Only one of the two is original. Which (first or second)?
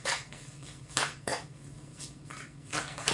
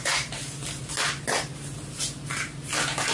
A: second